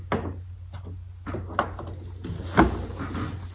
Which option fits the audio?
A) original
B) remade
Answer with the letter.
A